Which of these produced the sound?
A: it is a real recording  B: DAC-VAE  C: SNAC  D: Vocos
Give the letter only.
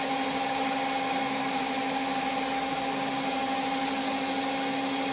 A